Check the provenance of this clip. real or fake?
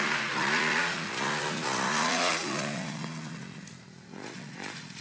fake